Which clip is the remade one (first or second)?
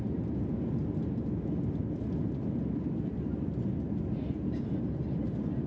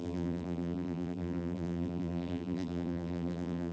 second